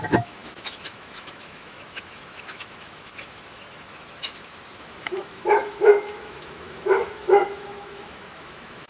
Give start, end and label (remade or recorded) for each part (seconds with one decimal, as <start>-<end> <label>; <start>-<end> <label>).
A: 0.0-8.9 remade